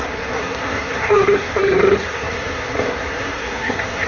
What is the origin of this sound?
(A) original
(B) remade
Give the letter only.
B